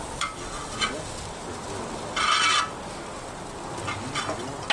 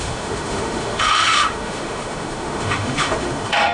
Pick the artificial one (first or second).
second